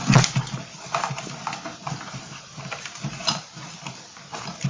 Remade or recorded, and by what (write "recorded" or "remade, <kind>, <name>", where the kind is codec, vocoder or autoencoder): recorded